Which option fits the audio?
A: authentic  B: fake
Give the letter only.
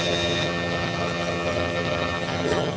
B